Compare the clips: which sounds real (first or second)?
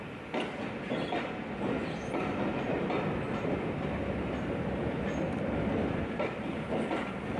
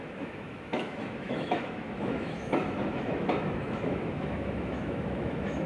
first